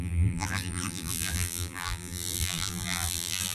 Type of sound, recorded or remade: remade